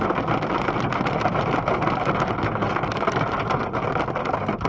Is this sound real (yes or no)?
yes